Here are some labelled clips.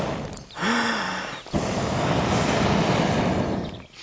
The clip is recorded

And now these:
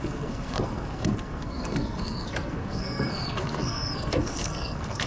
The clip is remade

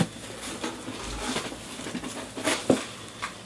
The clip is recorded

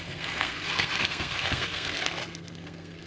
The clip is remade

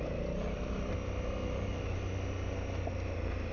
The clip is recorded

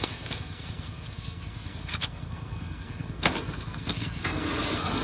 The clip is remade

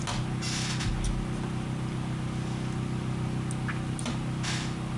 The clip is recorded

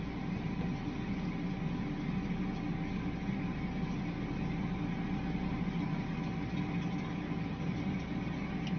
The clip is recorded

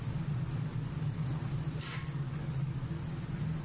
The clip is recorded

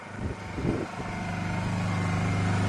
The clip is recorded